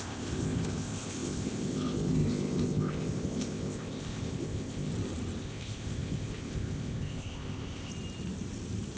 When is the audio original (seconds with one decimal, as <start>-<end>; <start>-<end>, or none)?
4.9-5.4; 7.9-9.0